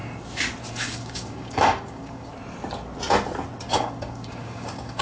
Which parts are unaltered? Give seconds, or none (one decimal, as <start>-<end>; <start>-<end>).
0.0-0.7; 2.3-3.6